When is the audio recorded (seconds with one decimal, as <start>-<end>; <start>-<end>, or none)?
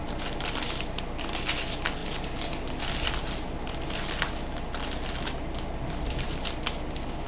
0.0-7.3